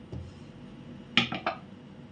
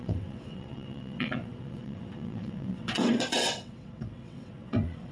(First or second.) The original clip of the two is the first